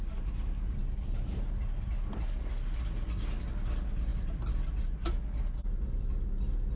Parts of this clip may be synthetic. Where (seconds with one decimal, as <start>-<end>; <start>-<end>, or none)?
none

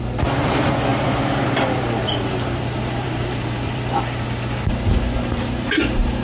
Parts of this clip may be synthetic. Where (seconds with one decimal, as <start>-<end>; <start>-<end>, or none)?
0.9-4.4

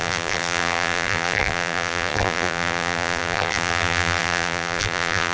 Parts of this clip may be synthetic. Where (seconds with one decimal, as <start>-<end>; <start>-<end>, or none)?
0.0-5.3

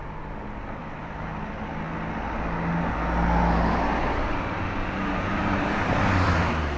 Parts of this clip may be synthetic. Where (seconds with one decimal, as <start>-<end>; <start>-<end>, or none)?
0.8-1.3; 5.3-6.8

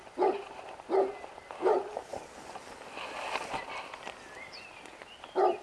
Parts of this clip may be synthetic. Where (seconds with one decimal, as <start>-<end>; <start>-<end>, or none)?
none

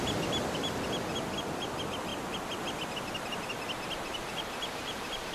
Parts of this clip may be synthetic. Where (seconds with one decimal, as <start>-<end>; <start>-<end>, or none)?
none